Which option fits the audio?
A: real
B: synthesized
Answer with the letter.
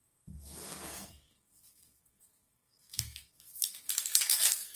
B